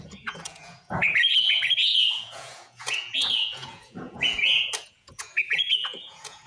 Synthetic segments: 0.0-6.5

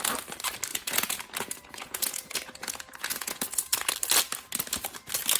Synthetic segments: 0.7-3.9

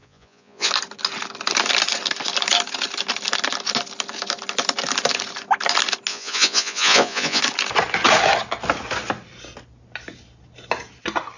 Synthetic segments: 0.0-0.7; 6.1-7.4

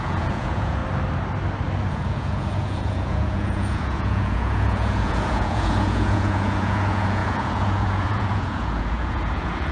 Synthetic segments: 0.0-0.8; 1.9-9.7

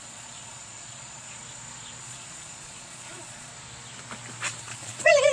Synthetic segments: 0.0-1.4; 2.0-3.5; 4.6-5.3

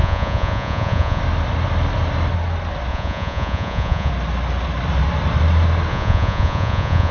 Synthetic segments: 0.0-1.2; 2.9-4.1; 5.9-7.1